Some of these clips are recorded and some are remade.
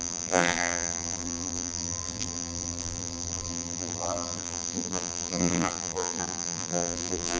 remade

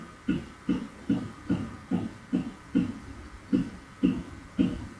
recorded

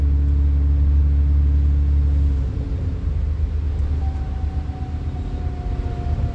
recorded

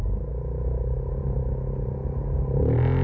recorded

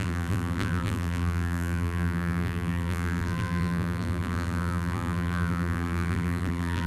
remade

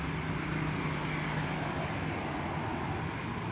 recorded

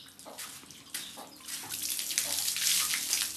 recorded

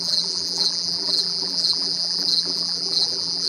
remade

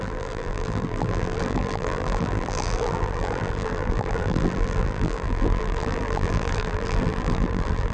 remade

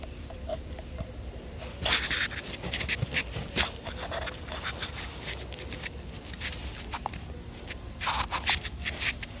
remade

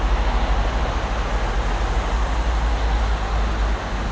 recorded